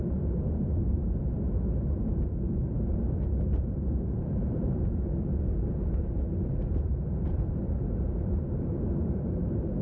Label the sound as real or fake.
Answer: fake